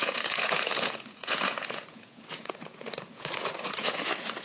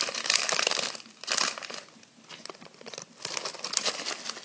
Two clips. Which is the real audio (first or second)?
second